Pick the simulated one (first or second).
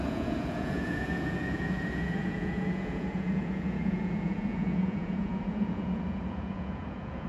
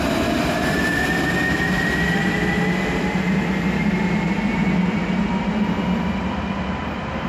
first